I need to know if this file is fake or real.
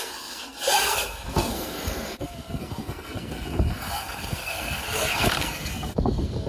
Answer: fake